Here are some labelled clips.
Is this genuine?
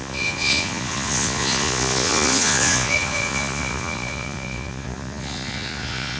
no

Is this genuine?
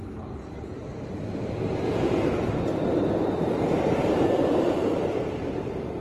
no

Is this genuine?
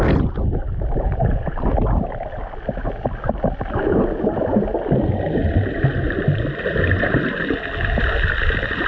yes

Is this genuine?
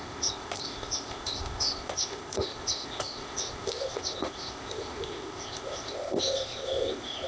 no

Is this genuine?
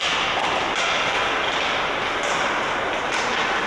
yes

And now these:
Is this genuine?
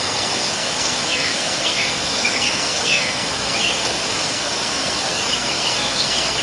no